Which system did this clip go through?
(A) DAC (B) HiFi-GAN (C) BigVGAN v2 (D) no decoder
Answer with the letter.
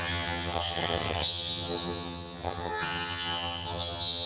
B